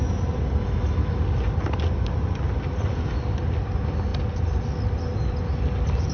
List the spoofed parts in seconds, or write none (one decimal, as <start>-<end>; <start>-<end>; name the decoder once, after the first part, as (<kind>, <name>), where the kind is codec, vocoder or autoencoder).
0.6-1.2 (autoencoder, DAC-VAE)